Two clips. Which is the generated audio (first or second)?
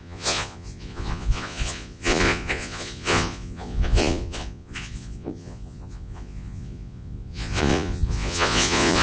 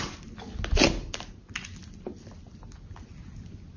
first